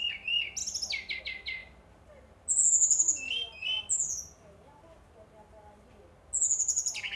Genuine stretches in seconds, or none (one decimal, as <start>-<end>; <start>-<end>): 0.0-7.2